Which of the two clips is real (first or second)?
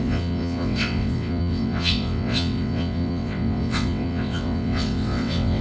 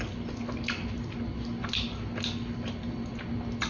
second